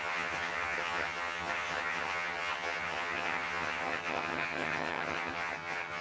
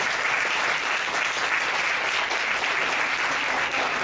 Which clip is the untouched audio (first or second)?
second